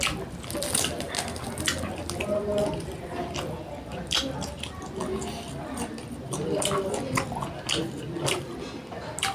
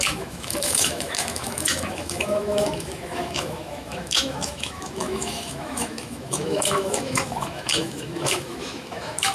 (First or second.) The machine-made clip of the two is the second